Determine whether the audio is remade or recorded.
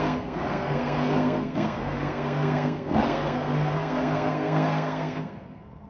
remade